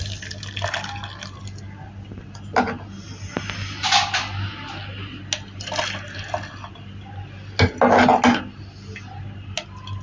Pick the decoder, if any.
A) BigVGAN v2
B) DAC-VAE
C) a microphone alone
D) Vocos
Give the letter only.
C